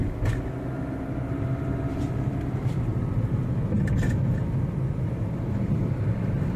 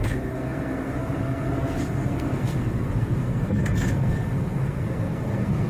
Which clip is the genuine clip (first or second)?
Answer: first